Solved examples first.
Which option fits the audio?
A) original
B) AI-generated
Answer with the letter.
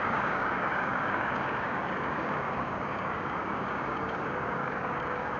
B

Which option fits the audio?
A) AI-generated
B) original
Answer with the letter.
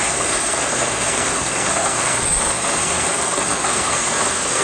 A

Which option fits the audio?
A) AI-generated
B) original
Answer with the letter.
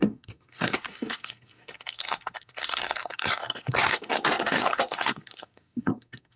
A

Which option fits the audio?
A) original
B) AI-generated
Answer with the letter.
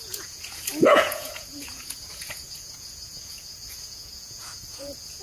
B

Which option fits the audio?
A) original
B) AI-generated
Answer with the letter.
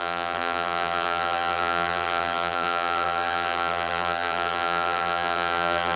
B